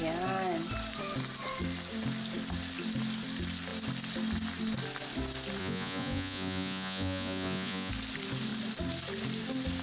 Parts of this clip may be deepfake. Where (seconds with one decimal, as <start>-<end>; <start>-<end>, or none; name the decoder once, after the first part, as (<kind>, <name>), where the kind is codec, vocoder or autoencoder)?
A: 5.6-7.9 (vocoder, Vocos)